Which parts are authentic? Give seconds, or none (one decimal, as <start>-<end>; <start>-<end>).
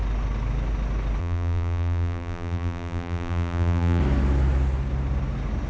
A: 0.0-1.2; 4.0-5.7